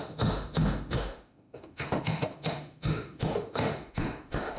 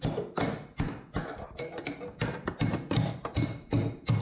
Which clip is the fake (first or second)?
first